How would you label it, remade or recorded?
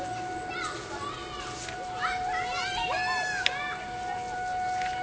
recorded